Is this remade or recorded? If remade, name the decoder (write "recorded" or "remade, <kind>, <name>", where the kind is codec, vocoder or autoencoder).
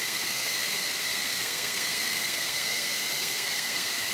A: remade, codec, SNAC